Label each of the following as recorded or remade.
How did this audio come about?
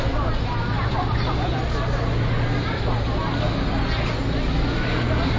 recorded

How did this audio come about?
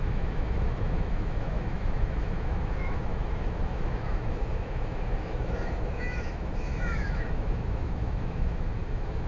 remade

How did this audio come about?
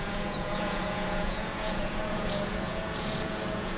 remade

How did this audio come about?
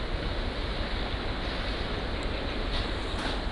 recorded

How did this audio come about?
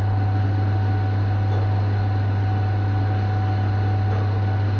recorded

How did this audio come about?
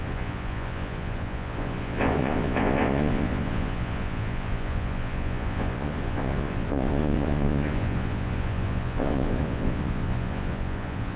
remade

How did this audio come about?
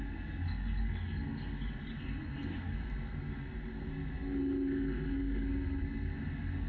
remade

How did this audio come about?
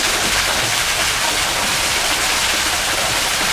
recorded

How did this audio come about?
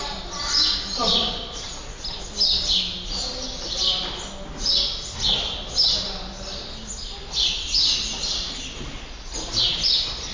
recorded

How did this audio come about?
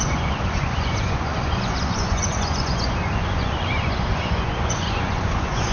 remade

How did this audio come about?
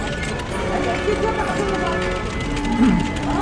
recorded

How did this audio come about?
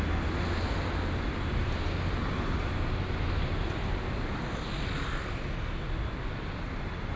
recorded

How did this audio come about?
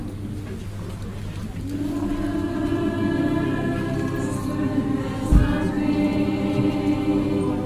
recorded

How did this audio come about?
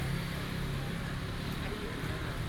recorded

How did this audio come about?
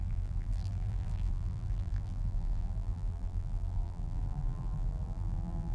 remade